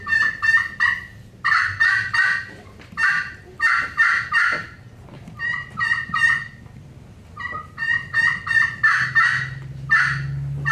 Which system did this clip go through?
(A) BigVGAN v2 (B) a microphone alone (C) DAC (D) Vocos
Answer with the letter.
B